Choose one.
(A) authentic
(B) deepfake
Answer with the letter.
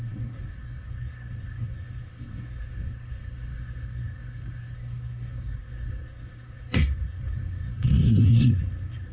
B